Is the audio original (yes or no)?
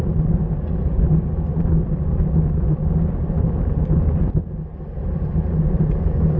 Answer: yes